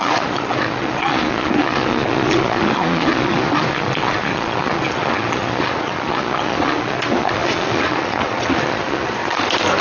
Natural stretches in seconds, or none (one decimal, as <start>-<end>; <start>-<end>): 9.2-9.8